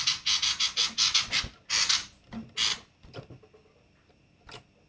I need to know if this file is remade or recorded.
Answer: recorded